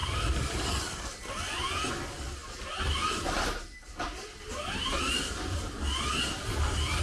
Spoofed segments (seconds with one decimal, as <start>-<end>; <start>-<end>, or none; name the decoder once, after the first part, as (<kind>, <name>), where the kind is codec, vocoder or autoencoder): none